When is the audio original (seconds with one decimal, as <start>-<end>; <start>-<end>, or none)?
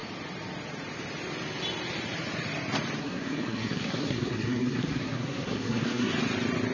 0.0-3.0; 6.1-6.7